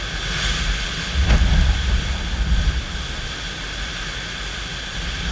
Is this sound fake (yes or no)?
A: no